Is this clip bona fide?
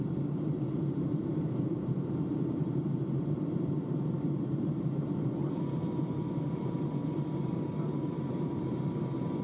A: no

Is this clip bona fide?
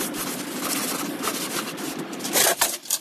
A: no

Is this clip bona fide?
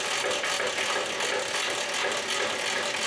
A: yes